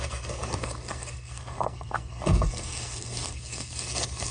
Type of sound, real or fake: fake